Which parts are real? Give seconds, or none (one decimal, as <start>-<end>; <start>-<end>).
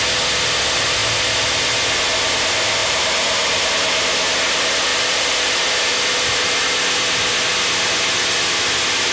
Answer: 0.0-2.8; 3.7-4.9; 5.7-9.1